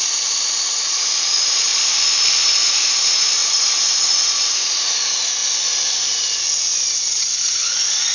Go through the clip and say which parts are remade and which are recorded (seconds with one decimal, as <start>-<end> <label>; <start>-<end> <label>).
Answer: 0.0-1.7 remade; 1.7-2.5 recorded; 2.5-5.4 remade; 5.4-6.8 recorded; 6.8-8.1 remade